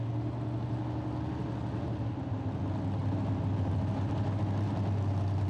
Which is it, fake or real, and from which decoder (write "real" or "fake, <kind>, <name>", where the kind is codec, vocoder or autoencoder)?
real